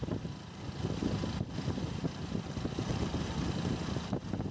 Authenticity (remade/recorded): recorded